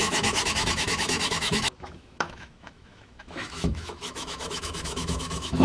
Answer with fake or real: fake